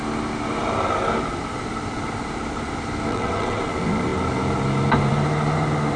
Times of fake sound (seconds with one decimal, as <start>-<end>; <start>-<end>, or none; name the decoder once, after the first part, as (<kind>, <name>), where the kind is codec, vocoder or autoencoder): 3.1-3.6 (vocoder, WaveNeXt)